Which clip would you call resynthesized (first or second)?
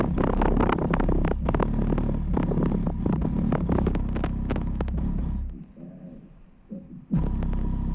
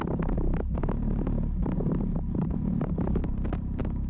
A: second